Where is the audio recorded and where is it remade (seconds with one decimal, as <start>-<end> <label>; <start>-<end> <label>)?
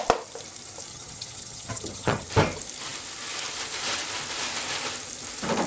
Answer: 0.0-0.9 recorded; 0.9-2.3 remade; 2.3-5.7 recorded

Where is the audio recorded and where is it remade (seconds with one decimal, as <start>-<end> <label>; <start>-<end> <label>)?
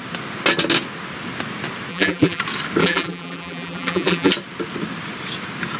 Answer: 0.0-1.9 recorded; 1.9-2.4 remade; 2.4-2.8 recorded; 2.8-4.3 remade; 4.3-5.8 recorded